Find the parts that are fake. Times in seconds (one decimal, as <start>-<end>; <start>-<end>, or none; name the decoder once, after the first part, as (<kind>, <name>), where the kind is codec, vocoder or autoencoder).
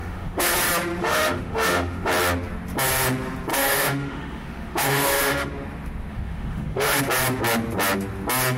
0.0-0.5 (autoencoder, DAC-VAE); 1.0-2.1; 3.5-5.5; 6.1-7.0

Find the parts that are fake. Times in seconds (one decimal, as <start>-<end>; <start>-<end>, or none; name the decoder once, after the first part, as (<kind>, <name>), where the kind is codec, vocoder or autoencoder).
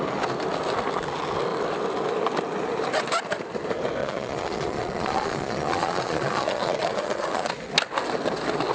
4.0-7.5 (vocoder, Vocos)